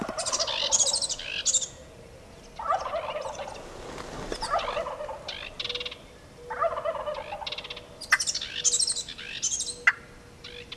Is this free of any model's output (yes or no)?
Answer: yes